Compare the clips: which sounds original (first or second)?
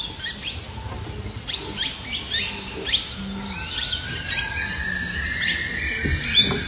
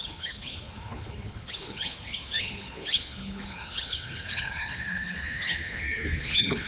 first